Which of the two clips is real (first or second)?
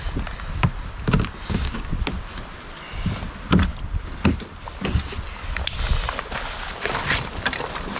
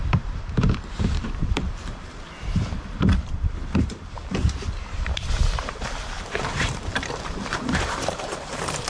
first